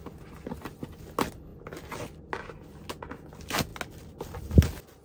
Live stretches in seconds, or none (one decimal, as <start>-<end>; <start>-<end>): 0.0-5.0